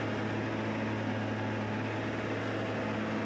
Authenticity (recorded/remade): recorded